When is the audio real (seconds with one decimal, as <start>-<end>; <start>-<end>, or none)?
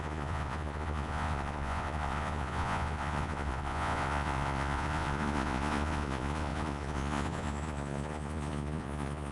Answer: none